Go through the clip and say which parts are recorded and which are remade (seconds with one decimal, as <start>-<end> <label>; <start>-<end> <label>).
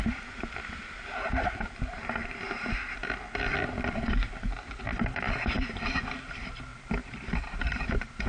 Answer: 0.0-3.5 recorded; 3.5-4.6 remade; 4.6-6.7 recorded; 6.7-7.8 remade; 7.8-8.3 recorded